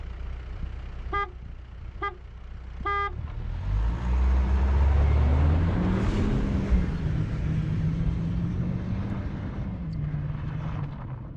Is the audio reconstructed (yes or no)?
no